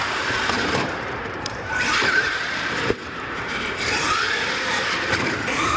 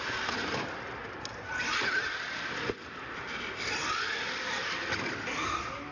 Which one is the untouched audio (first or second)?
second